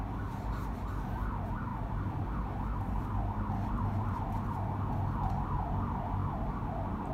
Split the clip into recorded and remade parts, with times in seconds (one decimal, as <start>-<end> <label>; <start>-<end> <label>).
0.0-7.1 recorded